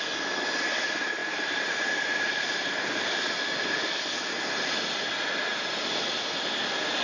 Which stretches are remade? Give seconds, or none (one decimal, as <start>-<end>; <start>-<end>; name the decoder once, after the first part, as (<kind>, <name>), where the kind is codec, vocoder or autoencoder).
1.2-4.1 (vocoder, BigVGAN v2); 5.5-6.5